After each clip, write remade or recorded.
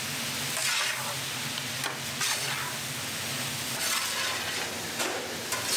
recorded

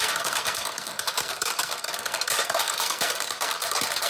remade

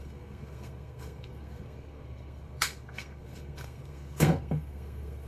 remade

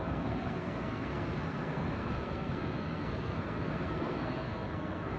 remade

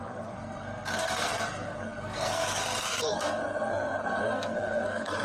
remade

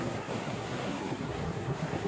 remade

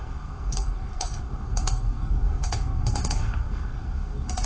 remade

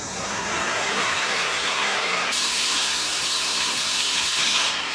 remade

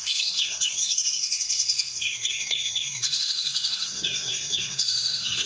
remade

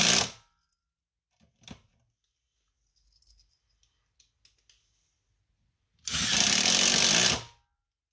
recorded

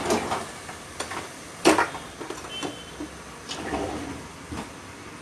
recorded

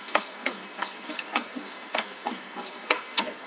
remade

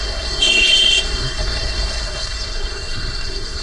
remade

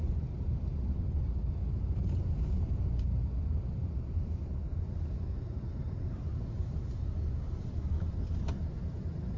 recorded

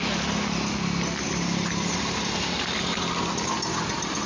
recorded